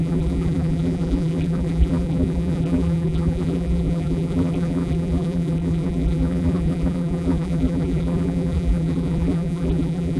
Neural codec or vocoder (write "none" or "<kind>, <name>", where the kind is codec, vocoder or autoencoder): vocoder, BigVGAN v2